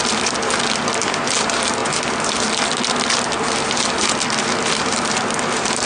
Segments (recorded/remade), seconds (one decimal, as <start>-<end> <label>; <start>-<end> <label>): 0.0-5.9 recorded